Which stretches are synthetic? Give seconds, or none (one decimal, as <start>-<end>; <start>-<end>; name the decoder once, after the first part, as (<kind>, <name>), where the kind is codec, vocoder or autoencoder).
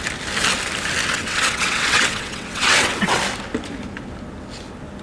1.1-3.2 (vocoder, WaveNeXt)